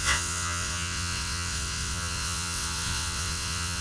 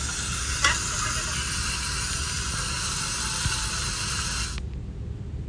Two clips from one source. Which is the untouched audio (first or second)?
second